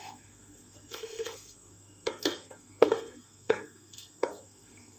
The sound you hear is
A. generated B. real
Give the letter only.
A